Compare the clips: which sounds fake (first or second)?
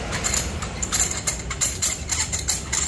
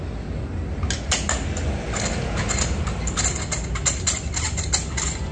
first